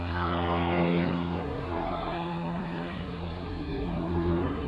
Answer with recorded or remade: remade